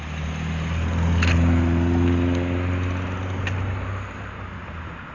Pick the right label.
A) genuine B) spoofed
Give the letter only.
A